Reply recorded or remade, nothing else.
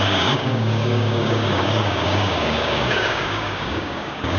remade